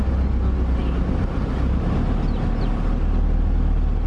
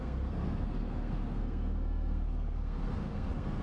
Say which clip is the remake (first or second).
second